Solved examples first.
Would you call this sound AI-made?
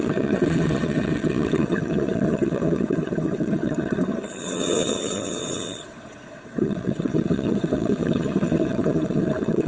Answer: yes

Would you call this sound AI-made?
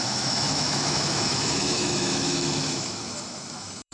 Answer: yes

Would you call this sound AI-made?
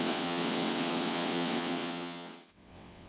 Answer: yes